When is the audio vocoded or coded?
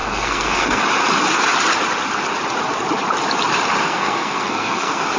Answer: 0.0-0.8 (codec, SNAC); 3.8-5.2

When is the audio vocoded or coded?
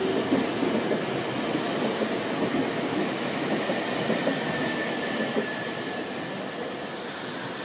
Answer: 2.9-3.5 (autoencoder, DAC-VAE)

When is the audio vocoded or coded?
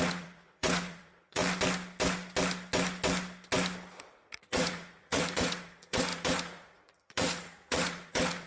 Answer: 0.0-1.4 (vocoder, Vocos); 4.0-8.5